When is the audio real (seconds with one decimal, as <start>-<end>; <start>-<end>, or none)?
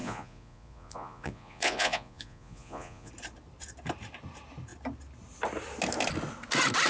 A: 3.1-6.9